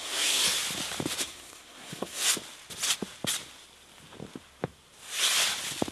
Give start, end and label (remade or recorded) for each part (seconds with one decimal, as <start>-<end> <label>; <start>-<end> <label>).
0.0-0.4 remade; 0.4-1.2 recorded; 1.2-2.2 remade; 2.2-5.9 recorded

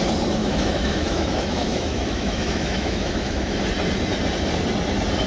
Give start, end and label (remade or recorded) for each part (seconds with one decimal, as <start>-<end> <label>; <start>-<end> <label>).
0.0-0.4 recorded; 0.4-3.6 remade; 3.6-5.3 recorded